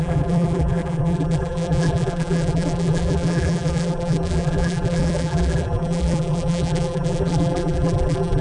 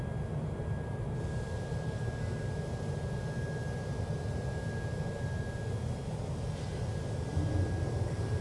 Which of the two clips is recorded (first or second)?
second